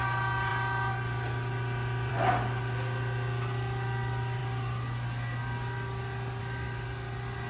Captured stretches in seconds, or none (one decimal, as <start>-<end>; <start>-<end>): 0.0-7.5